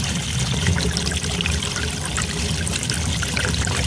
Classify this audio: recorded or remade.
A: recorded